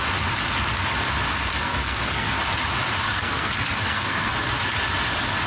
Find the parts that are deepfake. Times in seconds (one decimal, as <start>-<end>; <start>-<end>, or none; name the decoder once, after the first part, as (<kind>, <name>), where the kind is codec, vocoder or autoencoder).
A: 1.5-2.3 (codec, SNAC); 3.0-4.3